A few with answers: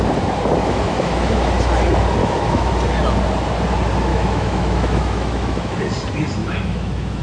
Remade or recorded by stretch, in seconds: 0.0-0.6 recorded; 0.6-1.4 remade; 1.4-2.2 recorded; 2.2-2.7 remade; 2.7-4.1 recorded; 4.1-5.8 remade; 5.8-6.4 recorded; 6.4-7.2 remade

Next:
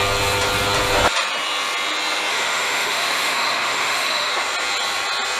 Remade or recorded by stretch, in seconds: 0.0-2.3 recorded; 2.3-4.3 remade; 4.3-5.4 recorded

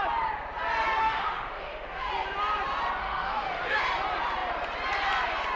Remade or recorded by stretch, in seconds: 0.0-1.0 recorded; 1.0-2.1 remade; 2.1-3.0 recorded; 3.0-3.8 remade; 3.8-5.6 recorded

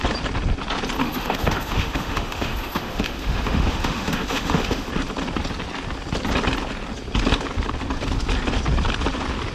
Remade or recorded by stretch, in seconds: 0.0-1.0 recorded; 1.0-4.9 remade; 4.9-9.5 recorded

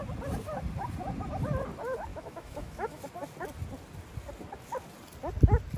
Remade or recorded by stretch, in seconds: 0.0-2.1 recorded; 2.1-3.0 remade; 3.0-5.8 recorded